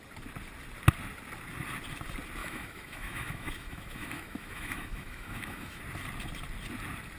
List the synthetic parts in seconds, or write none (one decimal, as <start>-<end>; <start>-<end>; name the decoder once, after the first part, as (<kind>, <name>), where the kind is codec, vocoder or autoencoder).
2.4-5.8 (autoencoder, DAC-VAE)

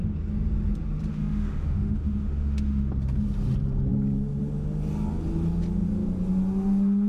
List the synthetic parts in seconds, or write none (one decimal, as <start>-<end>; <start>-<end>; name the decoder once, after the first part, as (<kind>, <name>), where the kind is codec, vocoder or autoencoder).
1.1-2.9 (autoencoder, DAC-VAE)

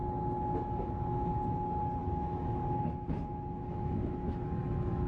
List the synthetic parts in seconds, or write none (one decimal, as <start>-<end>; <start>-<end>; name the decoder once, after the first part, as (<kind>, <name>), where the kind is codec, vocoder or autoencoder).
0.5-1.3 (autoencoder, DAC-VAE); 2.0-5.1

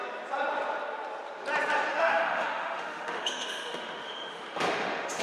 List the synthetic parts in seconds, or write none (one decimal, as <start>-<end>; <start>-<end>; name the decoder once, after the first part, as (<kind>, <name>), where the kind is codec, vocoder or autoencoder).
1.9-5.2 (autoencoder, DAC-VAE)